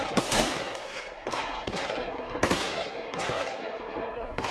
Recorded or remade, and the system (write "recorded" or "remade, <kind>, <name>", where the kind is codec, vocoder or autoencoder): remade, codec, SNAC